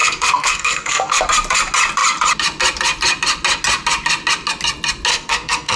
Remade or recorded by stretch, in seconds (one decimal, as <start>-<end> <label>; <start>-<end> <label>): 0.0-1.2 remade; 1.2-5.1 recorded; 5.1-5.8 remade